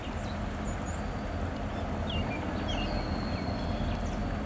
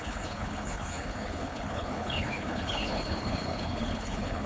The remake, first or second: second